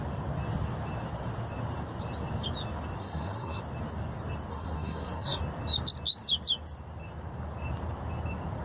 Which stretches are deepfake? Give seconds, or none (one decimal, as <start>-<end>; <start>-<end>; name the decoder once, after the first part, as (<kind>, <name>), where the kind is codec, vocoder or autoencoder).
3.0-3.6 (codec, SNAC); 4.5-5.4